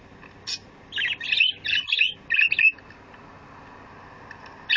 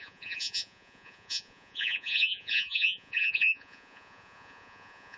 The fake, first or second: second